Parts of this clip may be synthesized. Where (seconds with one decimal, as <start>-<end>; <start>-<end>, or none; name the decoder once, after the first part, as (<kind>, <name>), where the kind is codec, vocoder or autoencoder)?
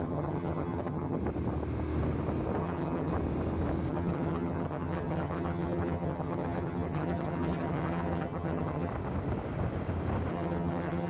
0.0-1.2 (vocoder, HiFi-GAN); 2.6-3.1; 3.9-8.9; 10.3-11.1